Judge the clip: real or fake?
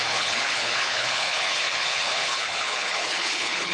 fake